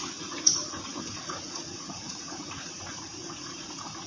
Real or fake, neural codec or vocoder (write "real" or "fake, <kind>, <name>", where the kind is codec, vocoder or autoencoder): fake, vocoder, Vocos